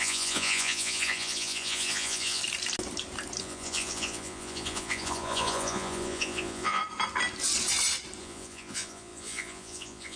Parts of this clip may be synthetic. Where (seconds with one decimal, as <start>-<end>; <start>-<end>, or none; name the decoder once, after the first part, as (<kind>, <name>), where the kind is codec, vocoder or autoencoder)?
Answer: 0.0-2.4 (vocoder, Vocos); 3.4-6.8; 8.2-10.2